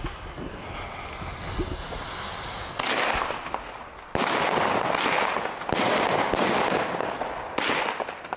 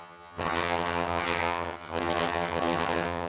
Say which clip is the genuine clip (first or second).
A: first